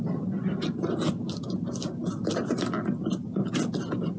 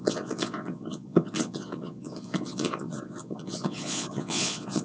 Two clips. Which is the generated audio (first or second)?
second